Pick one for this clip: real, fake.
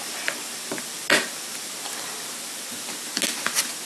real